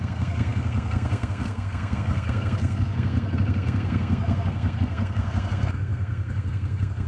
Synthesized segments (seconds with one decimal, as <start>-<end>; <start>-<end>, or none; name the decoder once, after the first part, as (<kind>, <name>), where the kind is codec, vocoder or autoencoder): 0.0-7.1 (codec, SNAC)